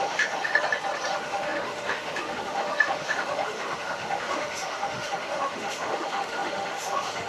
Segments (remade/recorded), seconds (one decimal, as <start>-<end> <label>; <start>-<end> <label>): 0.0-0.5 remade; 0.5-1.1 recorded; 1.1-7.3 remade